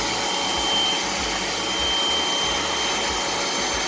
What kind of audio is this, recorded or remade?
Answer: recorded